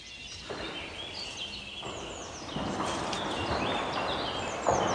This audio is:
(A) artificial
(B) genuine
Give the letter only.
B